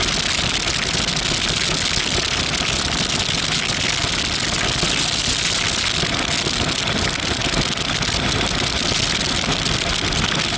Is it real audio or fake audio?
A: real